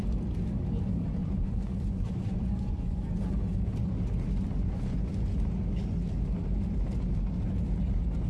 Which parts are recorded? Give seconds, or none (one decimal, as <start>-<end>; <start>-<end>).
0.0-1.2; 3.0-4.5; 5.1-8.3